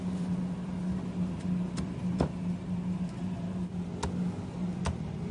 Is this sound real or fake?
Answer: real